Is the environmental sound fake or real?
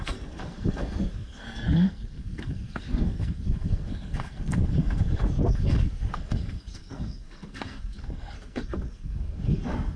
fake